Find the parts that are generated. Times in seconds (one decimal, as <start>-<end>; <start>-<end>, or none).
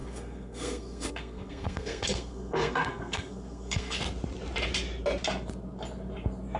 0.0-4.0